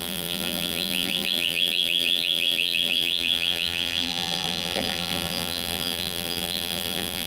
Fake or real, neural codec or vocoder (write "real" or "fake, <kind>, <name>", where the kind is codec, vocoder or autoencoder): fake, vocoder, BigVGAN v2